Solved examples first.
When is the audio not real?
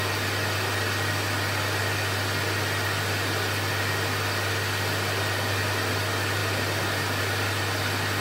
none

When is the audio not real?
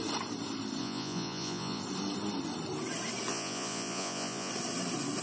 0.8-1.8 (vocoder, Vocos); 3.3-4.5